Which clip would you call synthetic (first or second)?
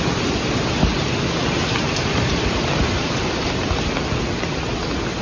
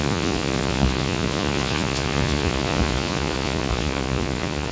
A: second